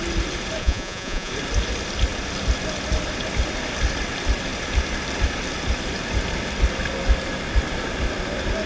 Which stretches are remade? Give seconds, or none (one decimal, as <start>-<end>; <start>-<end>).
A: 0.6-1.3

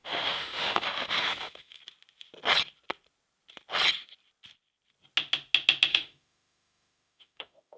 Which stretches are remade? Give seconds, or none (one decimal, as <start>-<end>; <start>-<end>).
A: 0.0-1.8; 5.9-7.8

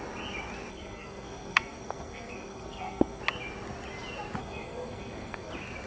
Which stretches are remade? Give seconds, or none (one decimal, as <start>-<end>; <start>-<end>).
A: 0.7-3.2; 4.4-5.5

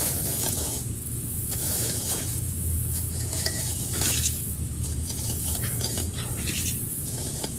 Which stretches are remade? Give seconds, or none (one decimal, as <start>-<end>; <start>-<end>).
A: 0.0-6.1; 6.9-7.6